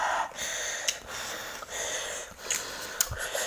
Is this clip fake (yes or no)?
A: no